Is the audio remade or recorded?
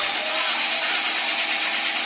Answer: recorded